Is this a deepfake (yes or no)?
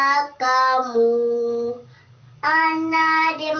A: yes